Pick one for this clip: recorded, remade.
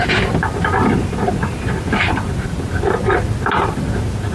recorded